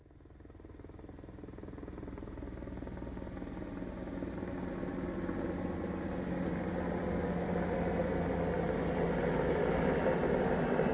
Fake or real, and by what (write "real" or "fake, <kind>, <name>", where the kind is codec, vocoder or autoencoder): real